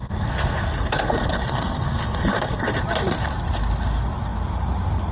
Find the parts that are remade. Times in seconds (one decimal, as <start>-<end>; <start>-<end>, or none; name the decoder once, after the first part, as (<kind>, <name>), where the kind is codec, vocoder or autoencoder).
0.0-2.8 (codec, SNAC)